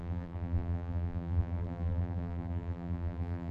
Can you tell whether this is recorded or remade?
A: remade